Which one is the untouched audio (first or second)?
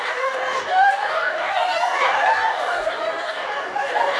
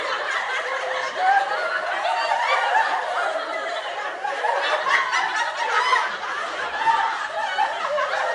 second